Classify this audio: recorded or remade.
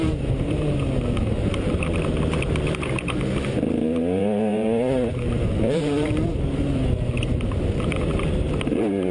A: remade